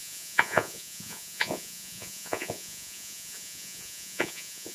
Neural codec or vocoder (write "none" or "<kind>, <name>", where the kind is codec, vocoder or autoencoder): vocoder, Vocos